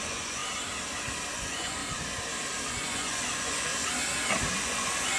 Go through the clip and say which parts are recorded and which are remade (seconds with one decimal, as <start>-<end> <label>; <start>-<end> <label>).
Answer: 0.0-0.4 remade; 0.4-1.3 recorded; 1.3-1.8 remade; 1.8-2.7 recorded; 2.7-3.7 remade; 3.7-4.6 recorded; 4.6-5.2 remade

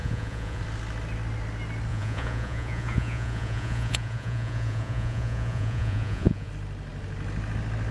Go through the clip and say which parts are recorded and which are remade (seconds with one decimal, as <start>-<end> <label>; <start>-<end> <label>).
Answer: 0.0-0.6 remade; 0.6-1.9 recorded; 1.9-6.5 remade; 6.5-7.9 recorded

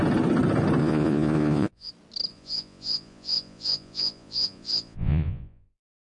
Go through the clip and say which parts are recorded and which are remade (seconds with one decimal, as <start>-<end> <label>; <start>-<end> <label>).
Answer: 0.0-0.8 recorded; 0.8-1.9 remade; 1.9-2.3 recorded; 2.3-6.1 remade

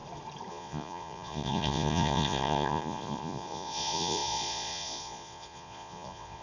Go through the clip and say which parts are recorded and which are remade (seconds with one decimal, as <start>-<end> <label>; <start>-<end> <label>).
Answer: 0.0-0.5 recorded; 0.5-6.4 remade